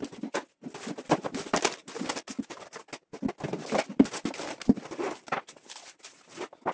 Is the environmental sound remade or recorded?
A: recorded